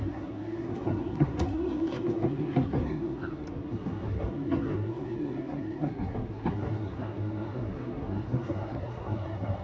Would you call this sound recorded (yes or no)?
no